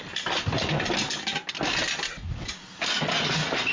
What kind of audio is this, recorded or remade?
recorded